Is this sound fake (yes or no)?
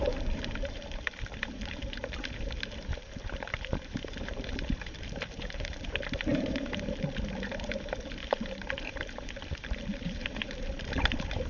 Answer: yes